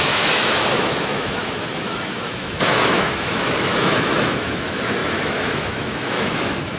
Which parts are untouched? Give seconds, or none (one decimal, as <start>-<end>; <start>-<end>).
none